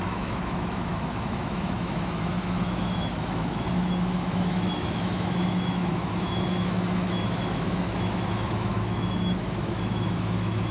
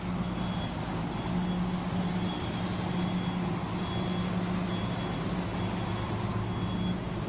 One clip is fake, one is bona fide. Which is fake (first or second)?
first